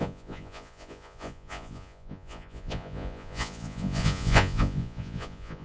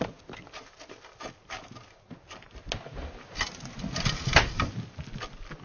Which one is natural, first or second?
second